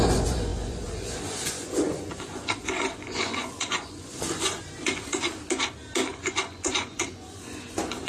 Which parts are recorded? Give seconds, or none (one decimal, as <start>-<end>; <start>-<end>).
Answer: 5.3-6.1